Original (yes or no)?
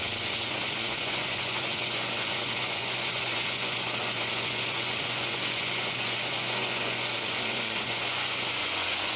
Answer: no